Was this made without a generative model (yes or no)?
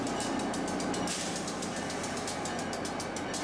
yes